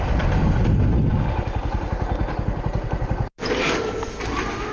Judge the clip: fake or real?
real